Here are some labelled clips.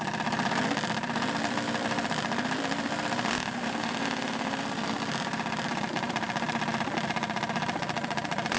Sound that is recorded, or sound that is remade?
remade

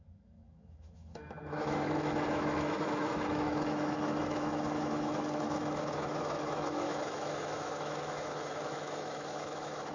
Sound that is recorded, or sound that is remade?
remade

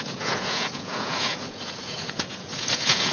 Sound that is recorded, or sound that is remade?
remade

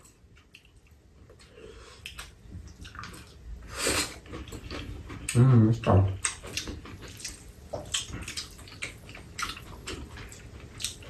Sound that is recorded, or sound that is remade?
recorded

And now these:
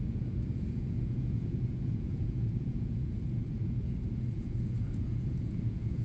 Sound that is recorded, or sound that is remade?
remade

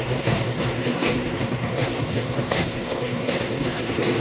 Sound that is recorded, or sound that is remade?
remade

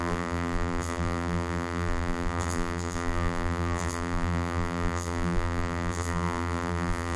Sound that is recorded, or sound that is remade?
remade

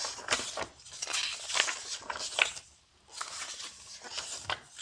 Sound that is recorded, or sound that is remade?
recorded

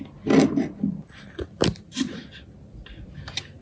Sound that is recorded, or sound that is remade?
recorded